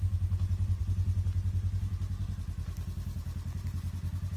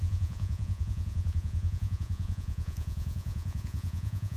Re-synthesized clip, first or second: second